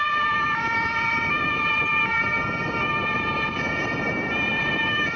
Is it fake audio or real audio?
real